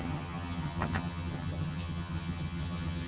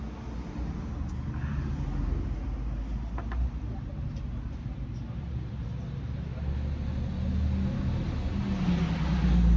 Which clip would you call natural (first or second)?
second